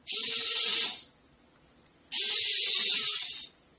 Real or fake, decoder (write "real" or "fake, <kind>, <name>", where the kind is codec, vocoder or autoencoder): real